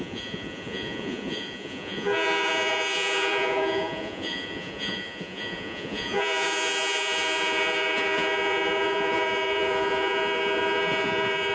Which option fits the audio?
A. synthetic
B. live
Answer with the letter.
A